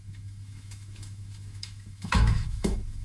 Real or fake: fake